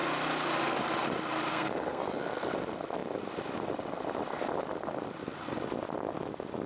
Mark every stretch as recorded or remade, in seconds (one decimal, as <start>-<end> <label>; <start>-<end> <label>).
0.0-1.5 recorded; 1.5-2.0 remade; 2.0-6.7 recorded